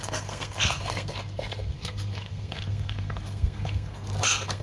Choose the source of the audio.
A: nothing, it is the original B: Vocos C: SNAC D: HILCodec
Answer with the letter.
C